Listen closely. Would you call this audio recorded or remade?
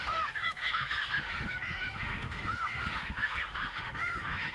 remade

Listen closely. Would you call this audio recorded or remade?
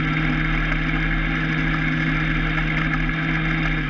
recorded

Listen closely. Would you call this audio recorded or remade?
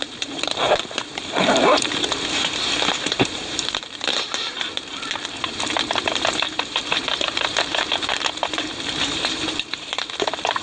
remade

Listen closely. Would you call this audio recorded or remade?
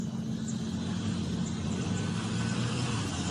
recorded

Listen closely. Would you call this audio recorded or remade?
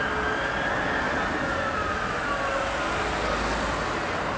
recorded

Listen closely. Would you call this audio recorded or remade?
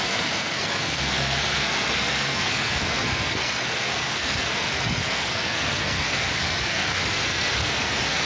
remade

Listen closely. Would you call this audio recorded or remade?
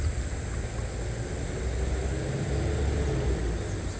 recorded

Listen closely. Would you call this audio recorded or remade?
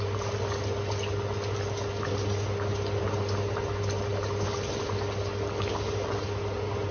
recorded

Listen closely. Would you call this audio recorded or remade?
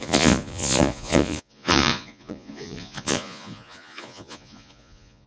remade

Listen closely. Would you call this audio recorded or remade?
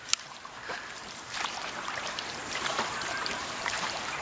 remade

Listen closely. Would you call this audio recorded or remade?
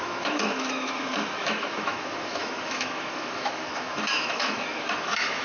remade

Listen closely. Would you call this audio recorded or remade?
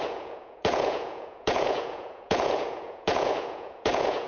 remade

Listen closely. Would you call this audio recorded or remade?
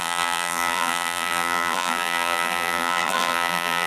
remade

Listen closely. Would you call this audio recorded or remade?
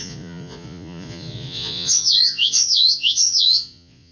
remade